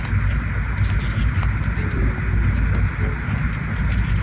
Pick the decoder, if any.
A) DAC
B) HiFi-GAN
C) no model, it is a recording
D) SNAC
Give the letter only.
C